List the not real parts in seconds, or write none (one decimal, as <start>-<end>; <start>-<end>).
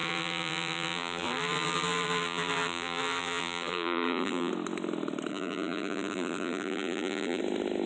0.0-4.5; 5.3-7.4